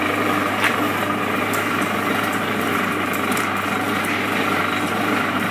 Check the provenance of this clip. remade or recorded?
remade